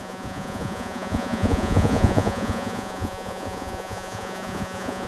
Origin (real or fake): fake